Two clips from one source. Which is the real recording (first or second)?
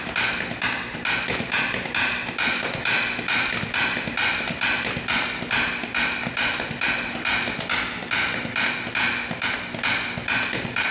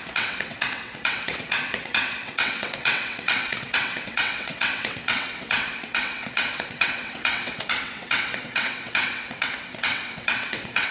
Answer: first